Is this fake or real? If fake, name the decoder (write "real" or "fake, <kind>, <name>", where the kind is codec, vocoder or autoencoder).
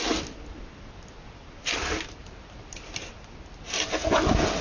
real